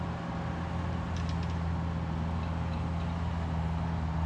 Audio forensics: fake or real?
real